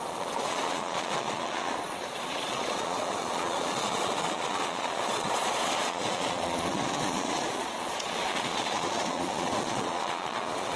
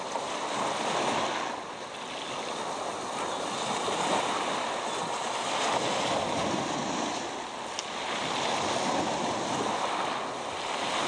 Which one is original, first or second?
second